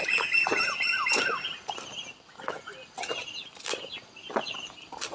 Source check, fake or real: real